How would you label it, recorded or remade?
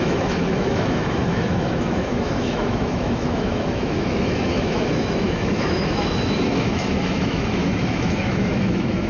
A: remade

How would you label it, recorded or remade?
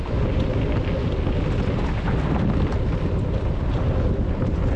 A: recorded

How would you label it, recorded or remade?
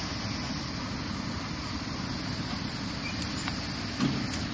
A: recorded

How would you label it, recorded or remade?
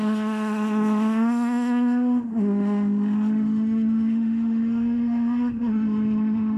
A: remade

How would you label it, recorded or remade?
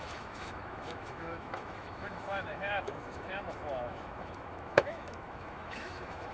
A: remade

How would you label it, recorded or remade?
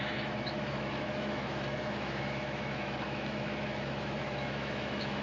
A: remade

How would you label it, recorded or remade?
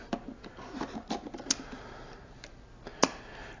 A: recorded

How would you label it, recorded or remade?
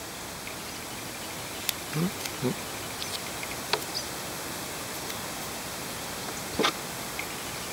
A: recorded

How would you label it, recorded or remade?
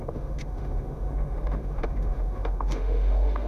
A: remade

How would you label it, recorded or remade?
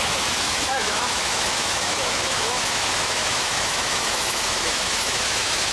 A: remade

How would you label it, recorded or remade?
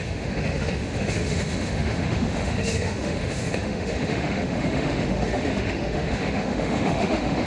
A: remade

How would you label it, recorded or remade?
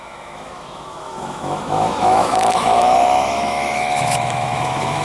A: remade